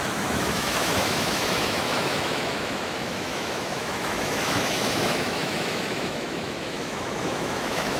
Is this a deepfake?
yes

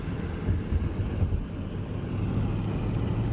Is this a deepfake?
no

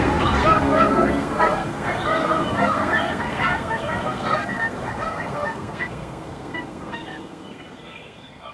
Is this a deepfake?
yes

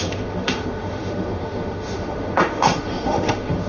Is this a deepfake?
yes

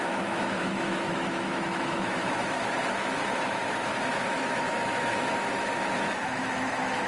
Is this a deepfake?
yes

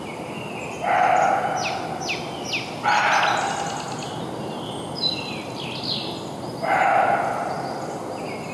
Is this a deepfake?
no